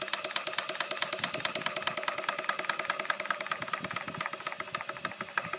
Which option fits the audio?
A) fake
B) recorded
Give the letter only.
B